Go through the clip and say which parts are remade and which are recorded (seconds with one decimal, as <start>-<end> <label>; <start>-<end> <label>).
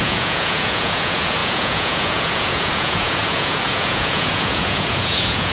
0.0-5.5 remade